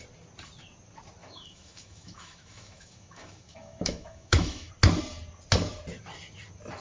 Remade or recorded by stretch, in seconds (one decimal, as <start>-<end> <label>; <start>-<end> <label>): 0.0-1.2 recorded; 1.2-4.7 remade; 4.7-6.8 recorded